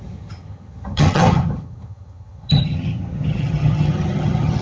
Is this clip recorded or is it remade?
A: remade